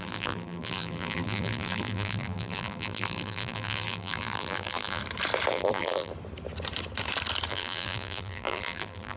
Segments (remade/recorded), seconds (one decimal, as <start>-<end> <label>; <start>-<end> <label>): 0.0-5.0 remade; 5.0-5.5 recorded; 5.5-6.1 remade; 6.1-7.5 recorded; 7.5-9.2 remade